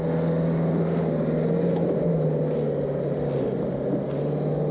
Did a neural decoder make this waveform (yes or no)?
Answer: no